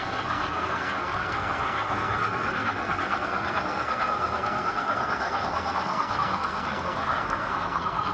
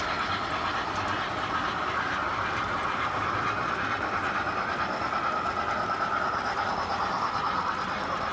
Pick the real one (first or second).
second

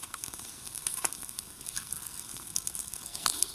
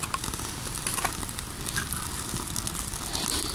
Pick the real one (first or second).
second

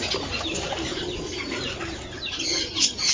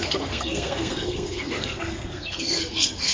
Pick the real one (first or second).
first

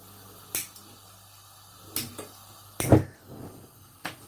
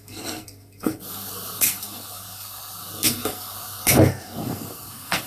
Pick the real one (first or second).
first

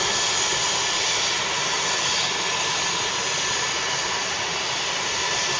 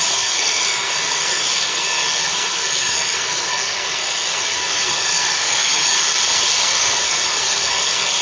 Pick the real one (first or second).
first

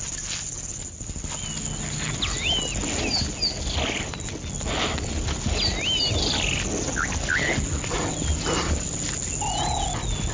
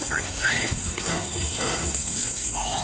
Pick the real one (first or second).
first